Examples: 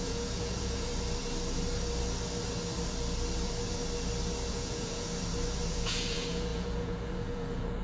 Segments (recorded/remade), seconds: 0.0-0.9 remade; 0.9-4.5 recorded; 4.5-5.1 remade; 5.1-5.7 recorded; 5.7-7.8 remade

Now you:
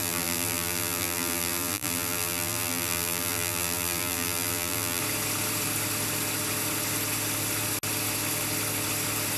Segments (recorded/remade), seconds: 0.0-5.0 remade; 5.0-9.4 recorded